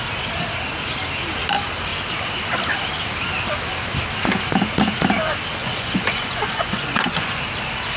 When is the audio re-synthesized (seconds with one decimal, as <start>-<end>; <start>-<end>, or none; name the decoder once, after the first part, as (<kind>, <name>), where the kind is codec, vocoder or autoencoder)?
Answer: 5.6-7.4 (vocoder, Vocos)